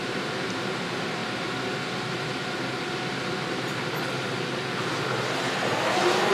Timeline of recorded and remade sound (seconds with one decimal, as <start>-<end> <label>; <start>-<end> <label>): 0.0-6.3 recorded